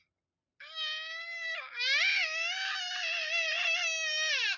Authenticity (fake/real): real